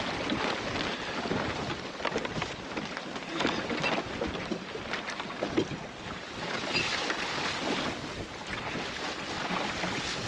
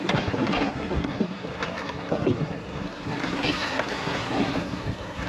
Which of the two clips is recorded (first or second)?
first